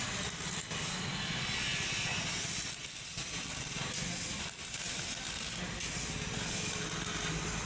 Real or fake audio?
real